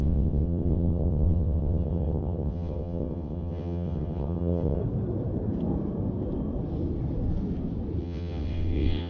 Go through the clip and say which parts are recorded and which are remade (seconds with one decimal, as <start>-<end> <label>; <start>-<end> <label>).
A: 0.0-4.8 remade; 4.8-8.0 recorded; 8.0-9.1 remade